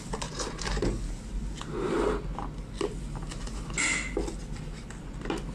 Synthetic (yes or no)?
no